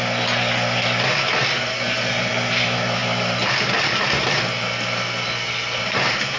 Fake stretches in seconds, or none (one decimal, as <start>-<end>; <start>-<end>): none